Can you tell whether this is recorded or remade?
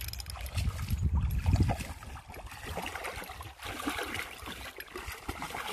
recorded